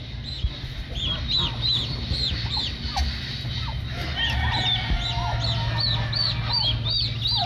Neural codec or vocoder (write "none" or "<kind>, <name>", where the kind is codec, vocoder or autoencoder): none